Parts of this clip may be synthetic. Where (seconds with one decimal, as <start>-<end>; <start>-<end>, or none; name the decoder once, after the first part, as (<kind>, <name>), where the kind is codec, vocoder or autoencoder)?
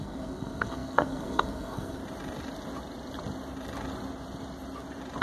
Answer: 0.0-2.0 (codec, SNAC)